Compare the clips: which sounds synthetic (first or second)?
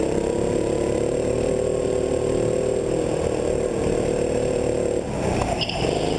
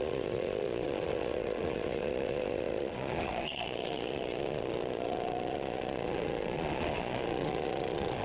second